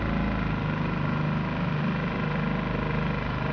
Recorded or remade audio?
recorded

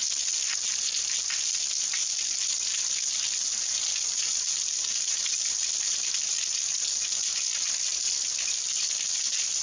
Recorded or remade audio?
recorded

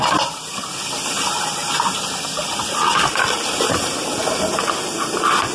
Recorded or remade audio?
recorded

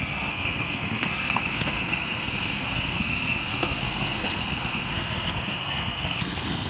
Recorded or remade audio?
remade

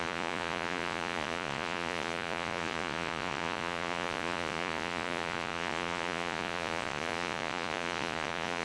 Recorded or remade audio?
remade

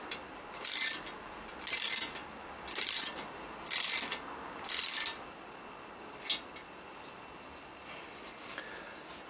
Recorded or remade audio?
recorded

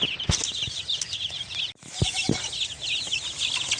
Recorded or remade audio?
recorded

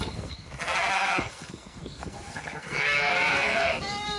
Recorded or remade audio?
remade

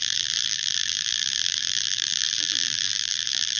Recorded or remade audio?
remade